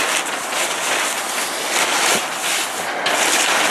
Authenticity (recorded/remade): recorded